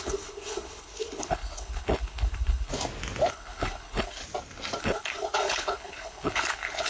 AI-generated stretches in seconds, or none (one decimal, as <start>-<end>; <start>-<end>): 0.0-2.7; 3.3-4.2; 4.8-6.9